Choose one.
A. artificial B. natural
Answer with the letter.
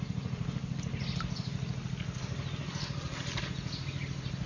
B